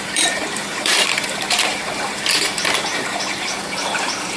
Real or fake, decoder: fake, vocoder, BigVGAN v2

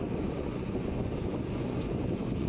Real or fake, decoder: fake, vocoder, Vocos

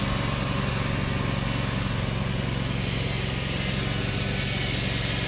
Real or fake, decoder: real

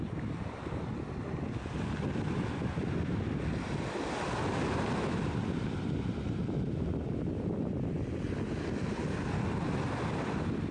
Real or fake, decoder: real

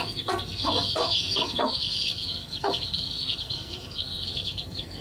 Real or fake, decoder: fake, codec, SNAC